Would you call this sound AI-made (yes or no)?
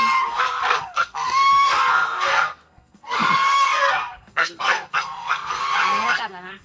yes